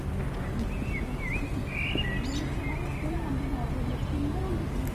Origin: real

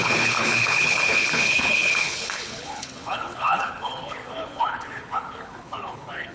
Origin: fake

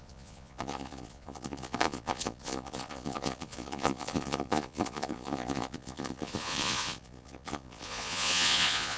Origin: fake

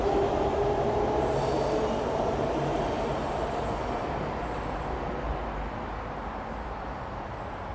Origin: real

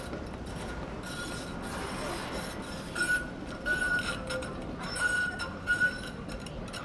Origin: real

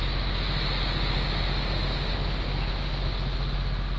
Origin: real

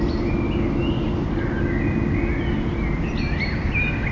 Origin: real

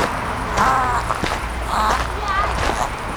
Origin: real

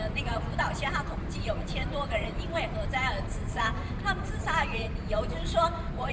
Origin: fake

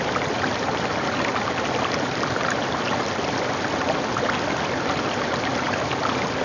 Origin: real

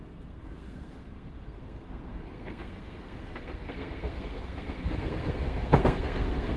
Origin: fake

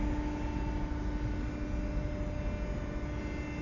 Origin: real